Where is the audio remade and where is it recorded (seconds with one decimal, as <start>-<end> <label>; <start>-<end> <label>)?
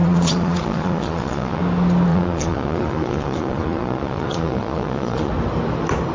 0.0-1.6 remade; 1.6-2.1 recorded; 2.1-5.3 remade; 5.3-6.1 recorded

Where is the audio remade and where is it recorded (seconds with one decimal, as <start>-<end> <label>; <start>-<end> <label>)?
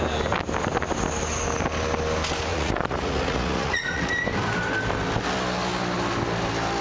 0.0-2.5 recorded; 2.5-4.1 remade; 4.1-6.8 recorded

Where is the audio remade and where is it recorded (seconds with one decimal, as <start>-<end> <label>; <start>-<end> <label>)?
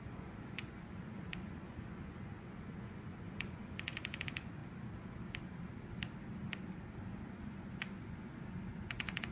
0.0-4.6 remade; 4.6-7.3 recorded; 7.3-9.3 remade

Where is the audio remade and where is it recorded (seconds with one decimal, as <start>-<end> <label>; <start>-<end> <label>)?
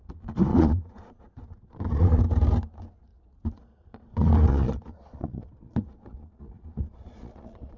0.0-0.5 recorded; 0.5-2.2 remade; 2.2-3.1 recorded; 3.1-7.8 remade